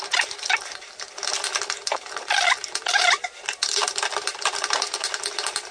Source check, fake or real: real